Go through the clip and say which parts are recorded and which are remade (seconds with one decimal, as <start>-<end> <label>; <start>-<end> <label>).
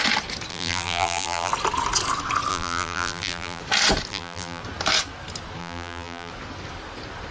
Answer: 0.0-0.5 recorded; 0.5-1.5 remade; 1.5-2.5 recorded; 2.5-3.6 remade; 3.6-4.1 recorded; 4.1-4.6 remade; 4.6-5.6 recorded; 5.6-6.3 remade; 6.3-7.3 recorded